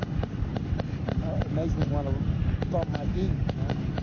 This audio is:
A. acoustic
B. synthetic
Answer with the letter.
A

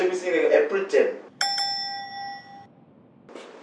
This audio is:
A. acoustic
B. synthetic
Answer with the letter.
A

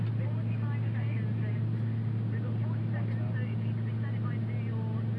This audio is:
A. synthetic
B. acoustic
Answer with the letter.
B